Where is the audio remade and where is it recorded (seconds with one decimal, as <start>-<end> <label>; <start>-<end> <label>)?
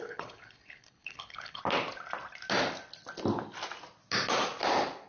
0.0-1.6 remade; 1.6-5.1 recorded